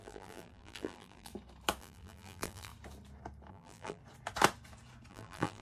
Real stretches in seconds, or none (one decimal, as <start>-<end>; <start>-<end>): 1.3-1.8; 2.7-3.5; 4.0-5.1